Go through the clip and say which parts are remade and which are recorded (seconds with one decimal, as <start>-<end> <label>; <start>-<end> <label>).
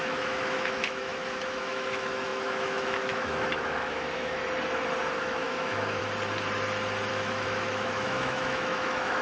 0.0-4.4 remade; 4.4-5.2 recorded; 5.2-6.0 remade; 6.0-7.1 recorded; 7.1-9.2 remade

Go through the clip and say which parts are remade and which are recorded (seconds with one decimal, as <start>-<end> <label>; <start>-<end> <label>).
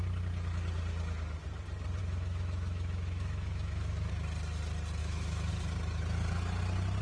0.0-2.0 recorded; 2.0-4.1 remade; 4.1-5.0 recorded; 5.0-5.5 remade; 5.5-7.0 recorded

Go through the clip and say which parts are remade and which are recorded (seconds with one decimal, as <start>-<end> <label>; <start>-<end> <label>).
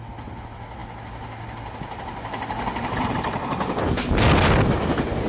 0.0-5.3 recorded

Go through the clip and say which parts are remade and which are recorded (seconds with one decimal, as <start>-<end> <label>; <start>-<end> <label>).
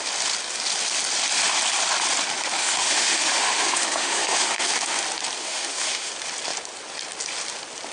0.0-2.6 recorded; 2.6-5.0 remade; 5.0-5.4 recorded; 5.4-6.1 remade; 6.1-7.9 recorded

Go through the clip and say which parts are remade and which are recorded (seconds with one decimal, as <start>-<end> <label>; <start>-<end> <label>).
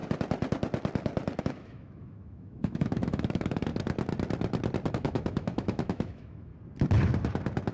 0.0-1.4 recorded; 1.4-3.7 remade; 3.7-4.9 recorded; 4.9-6.5 remade; 6.5-7.7 recorded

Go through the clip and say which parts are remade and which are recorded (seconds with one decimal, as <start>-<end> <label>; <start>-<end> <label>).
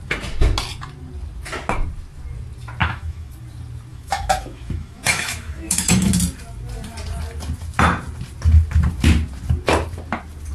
0.0-2.8 recorded; 2.8-3.3 remade; 3.3-3.9 recorded; 3.9-6.2 remade; 6.2-10.5 recorded